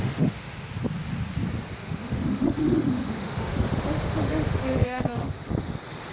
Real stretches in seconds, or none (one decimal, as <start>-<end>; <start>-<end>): 0.7-1.8; 5.5-6.1